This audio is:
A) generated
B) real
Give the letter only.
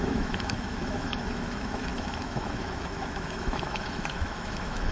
A